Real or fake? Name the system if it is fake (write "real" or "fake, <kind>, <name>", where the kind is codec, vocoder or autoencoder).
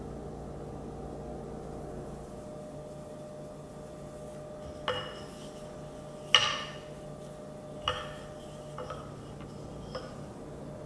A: real